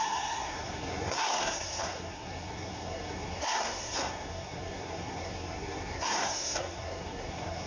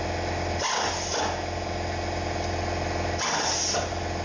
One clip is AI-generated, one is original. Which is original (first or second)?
second